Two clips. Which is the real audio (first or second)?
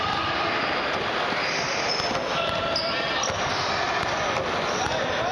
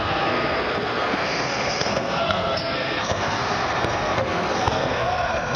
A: first